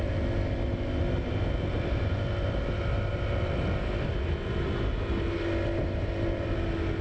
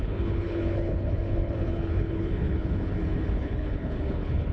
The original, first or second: first